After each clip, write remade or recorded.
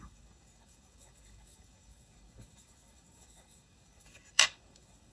remade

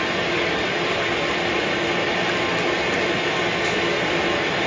recorded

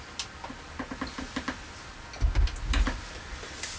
recorded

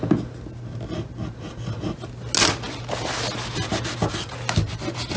recorded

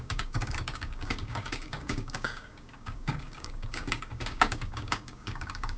remade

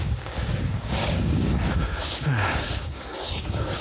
remade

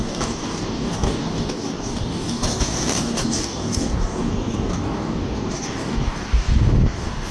remade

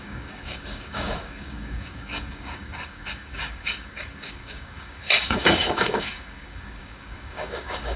remade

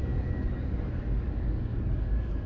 remade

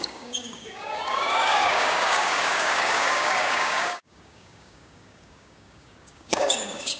remade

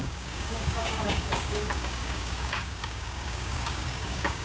remade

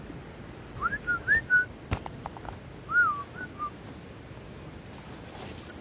recorded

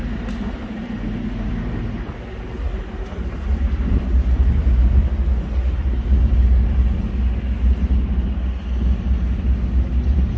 recorded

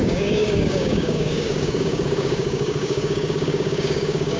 remade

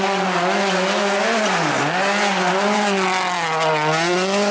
recorded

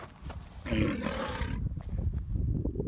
recorded